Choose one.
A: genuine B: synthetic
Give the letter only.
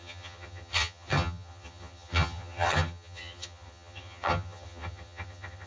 B